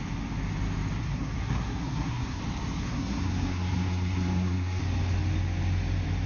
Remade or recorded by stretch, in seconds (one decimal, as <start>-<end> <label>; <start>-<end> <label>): 0.0-1.0 recorded; 1.0-2.4 remade; 2.4-2.8 recorded; 2.8-4.8 remade; 4.8-6.3 recorded